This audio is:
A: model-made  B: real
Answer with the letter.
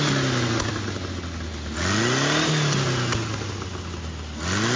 B